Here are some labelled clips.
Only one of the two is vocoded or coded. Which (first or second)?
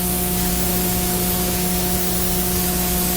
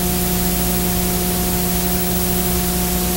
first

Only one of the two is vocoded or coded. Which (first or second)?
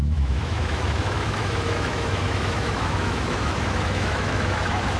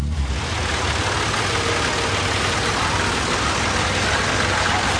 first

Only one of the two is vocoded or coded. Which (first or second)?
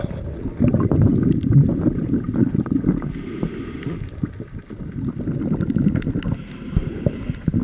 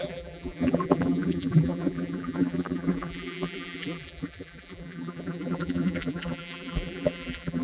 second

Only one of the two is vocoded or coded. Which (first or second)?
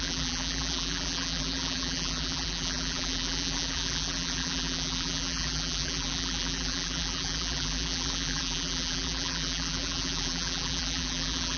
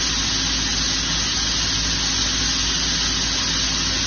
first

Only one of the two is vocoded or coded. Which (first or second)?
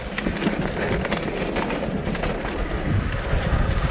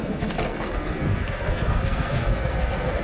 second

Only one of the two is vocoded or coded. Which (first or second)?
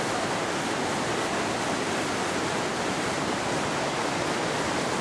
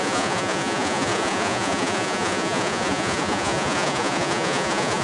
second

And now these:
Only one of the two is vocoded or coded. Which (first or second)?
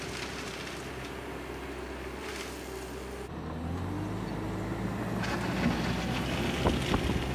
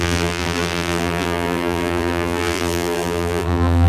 second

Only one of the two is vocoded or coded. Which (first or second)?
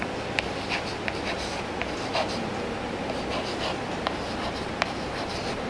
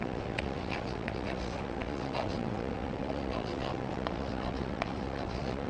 second